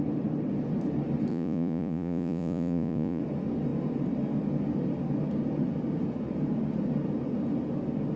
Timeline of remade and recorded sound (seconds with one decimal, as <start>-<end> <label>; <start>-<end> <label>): 0.0-1.3 recorded; 1.3-3.2 remade; 3.2-8.2 recorded

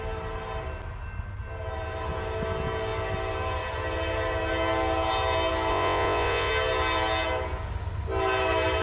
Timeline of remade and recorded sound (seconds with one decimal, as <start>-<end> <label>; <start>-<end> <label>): 0.0-5.7 recorded; 5.7-6.5 remade; 6.5-8.8 recorded

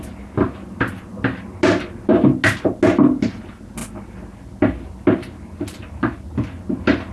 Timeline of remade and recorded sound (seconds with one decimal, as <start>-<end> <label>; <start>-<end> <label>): 0.0-7.1 recorded

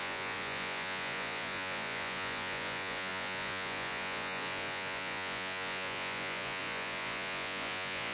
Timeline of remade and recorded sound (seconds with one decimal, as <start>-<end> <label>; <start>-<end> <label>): 0.0-8.1 remade

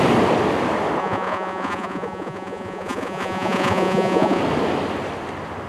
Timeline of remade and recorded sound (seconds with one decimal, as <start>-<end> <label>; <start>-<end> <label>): 0.0-1.0 recorded; 1.0-4.4 remade; 4.4-5.7 recorded